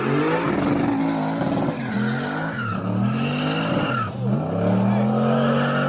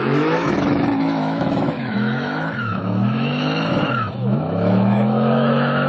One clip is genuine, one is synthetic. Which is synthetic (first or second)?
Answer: second